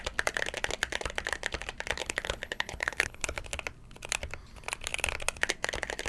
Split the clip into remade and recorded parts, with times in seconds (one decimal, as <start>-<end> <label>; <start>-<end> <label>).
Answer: 0.0-2.0 recorded; 2.0-3.4 remade; 3.4-6.1 recorded